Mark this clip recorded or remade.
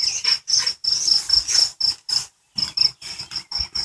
recorded